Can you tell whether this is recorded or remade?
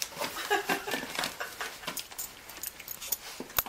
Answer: recorded